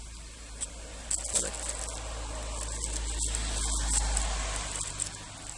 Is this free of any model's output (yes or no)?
yes